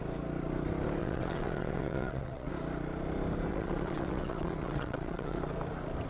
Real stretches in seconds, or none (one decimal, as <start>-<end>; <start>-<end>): 0.0-1.0; 2.5-3.5; 5.4-6.1